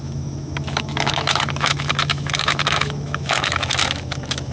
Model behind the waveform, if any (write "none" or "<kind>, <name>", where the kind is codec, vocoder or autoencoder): autoencoder, DAC-VAE